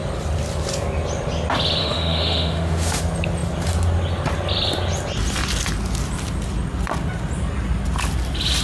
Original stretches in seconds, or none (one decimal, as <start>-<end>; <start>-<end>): 0.0-1.8; 3.0-8.6